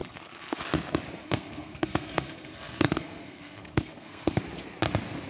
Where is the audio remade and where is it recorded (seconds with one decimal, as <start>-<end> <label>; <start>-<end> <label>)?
0.0-0.6 remade; 0.6-1.2 recorded; 1.2-4.4 remade; 4.4-5.3 recorded